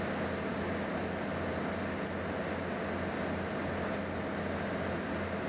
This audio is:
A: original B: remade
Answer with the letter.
A